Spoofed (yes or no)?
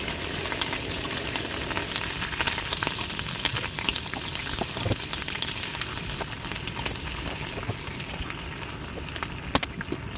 no